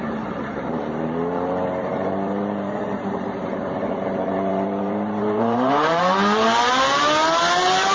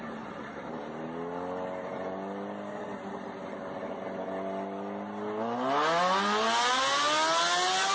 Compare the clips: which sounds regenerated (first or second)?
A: first